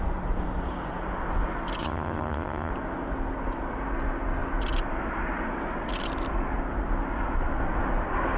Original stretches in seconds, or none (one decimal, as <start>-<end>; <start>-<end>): 0.0-1.8; 2.7-8.4

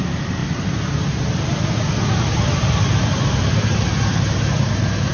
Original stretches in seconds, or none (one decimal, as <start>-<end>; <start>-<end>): 0.0-5.1

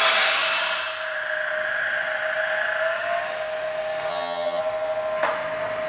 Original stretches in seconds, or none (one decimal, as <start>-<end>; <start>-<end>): 0.0-4.1; 4.6-5.9

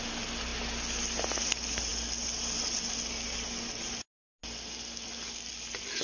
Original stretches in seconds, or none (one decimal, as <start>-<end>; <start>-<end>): 0.0-6.0

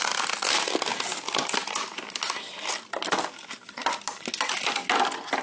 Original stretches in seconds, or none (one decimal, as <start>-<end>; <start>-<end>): 0.0-5.4

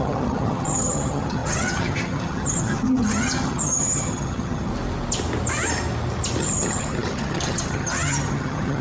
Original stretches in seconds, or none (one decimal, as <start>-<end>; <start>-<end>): 4.7-6.4